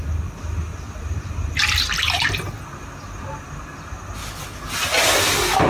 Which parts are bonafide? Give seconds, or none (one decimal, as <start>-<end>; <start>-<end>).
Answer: 0.0-4.2; 4.7-5.7